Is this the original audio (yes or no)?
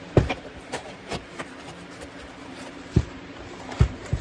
no